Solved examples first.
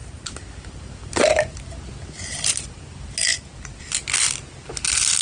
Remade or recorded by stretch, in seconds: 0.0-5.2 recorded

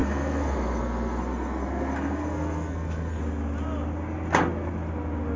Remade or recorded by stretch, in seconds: 0.0-3.2 remade; 3.2-5.4 recorded

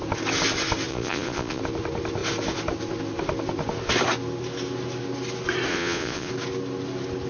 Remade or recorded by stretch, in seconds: 0.0-0.9 recorded; 0.9-1.6 remade; 1.6-5.7 recorded; 5.7-6.3 remade; 6.3-7.3 recorded